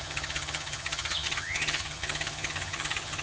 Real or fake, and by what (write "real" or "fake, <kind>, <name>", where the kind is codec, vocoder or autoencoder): fake, vocoder, HiFi-GAN